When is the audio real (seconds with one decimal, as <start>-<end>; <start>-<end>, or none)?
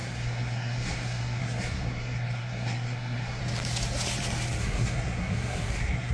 3.4-4.6